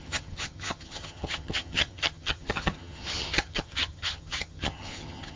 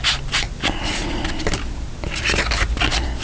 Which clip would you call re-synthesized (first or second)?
first